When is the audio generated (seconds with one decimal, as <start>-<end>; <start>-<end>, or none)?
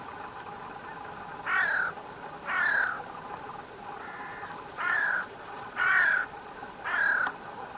4.7-6.5